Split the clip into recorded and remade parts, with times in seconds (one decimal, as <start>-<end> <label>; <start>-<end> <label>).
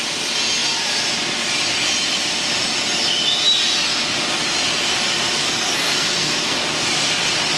0.0-5.4 recorded; 5.4-6.6 remade; 6.6-7.6 recorded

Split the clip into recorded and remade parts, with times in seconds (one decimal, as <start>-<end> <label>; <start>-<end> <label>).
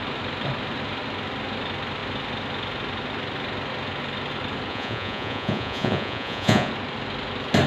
0.0-4.7 recorded; 4.7-6.7 remade; 6.7-7.7 recorded